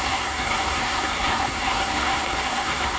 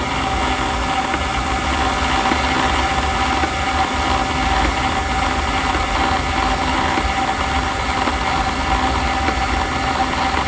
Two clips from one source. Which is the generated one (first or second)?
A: first